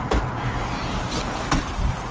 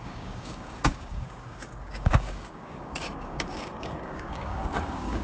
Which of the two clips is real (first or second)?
first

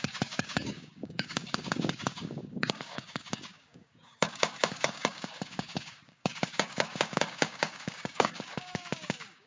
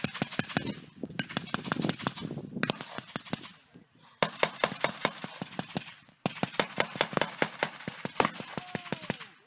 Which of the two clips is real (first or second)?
second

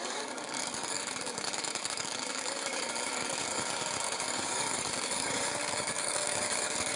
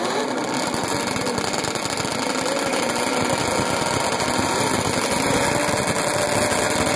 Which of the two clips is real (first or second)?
second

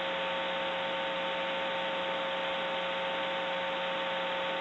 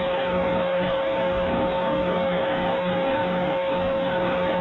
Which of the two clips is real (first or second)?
first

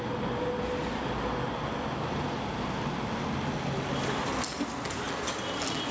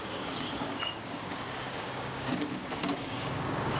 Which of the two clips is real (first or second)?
first